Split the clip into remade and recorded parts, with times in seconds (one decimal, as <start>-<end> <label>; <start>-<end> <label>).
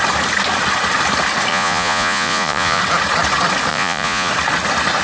0.0-1.5 recorded; 1.5-2.8 remade; 2.8-3.7 recorded; 3.7-4.3 remade; 4.3-5.0 recorded